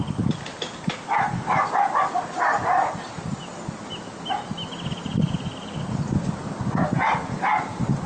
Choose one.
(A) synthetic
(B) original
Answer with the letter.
B